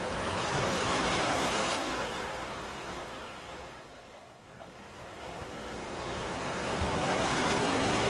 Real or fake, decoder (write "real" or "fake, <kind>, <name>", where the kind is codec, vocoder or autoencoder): fake, codec, SNAC